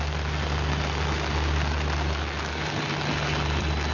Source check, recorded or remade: recorded